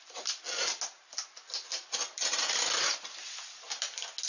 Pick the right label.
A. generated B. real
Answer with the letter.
B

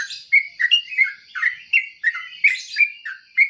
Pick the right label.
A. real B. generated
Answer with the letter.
A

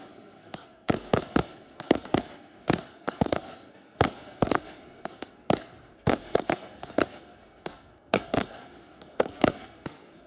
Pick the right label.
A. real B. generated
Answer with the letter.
B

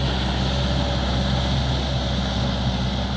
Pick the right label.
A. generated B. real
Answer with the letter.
B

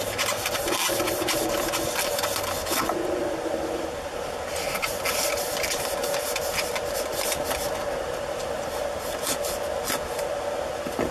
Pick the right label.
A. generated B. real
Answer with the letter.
B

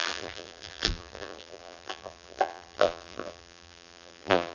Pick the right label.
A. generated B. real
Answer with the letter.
A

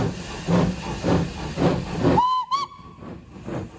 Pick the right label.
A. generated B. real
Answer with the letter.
B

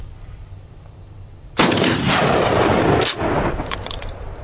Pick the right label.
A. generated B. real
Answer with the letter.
B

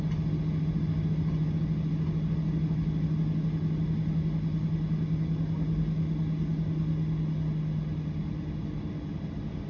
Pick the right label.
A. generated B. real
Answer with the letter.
B